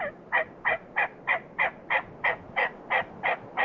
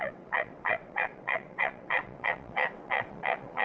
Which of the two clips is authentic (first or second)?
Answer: first